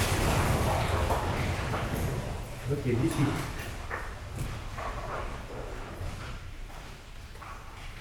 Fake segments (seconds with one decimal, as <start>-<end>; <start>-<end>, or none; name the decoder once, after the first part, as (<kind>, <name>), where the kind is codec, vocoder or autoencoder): 0.0-8.0 (vocoder, BigVGAN v2)